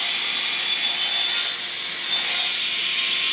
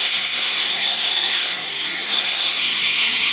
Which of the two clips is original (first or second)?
first